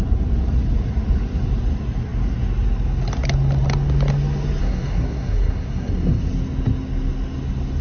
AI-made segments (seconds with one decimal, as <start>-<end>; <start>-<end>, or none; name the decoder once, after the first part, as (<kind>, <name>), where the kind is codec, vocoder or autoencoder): 4.6-6.2 (codec, SNAC)